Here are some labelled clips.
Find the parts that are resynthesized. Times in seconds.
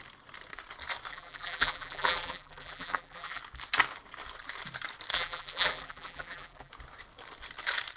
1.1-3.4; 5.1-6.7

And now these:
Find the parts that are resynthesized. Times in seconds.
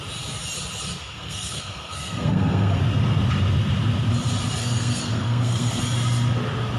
1.0-2.8; 4.6-5.8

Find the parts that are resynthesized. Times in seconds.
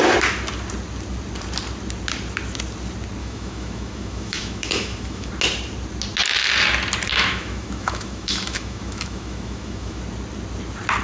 3.2-5.3; 7.1-10.0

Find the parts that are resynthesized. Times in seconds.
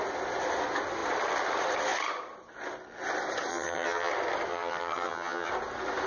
3.5-4.1; 4.5-5.5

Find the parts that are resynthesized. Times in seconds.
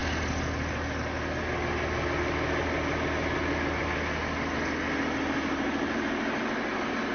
none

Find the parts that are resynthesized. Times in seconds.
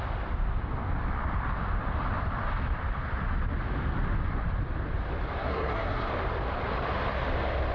5.4-6.1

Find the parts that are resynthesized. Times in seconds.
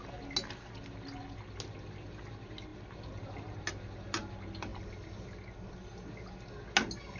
none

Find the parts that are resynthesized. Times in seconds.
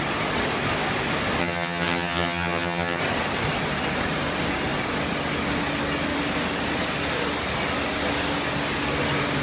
1.4-3.0